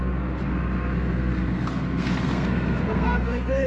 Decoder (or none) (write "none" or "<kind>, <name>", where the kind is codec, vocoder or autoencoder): codec, SNAC